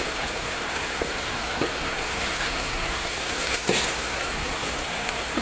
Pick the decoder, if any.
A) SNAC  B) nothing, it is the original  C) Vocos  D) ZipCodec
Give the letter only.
A